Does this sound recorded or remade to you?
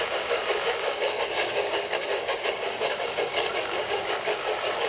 remade